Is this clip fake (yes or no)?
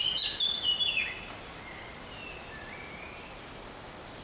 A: no